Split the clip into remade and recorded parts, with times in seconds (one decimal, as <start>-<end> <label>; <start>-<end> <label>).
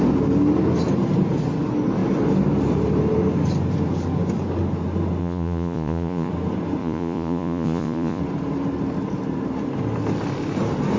0.0-5.2 recorded; 5.2-6.3 remade; 6.3-6.8 recorded; 6.8-8.2 remade; 8.2-11.0 recorded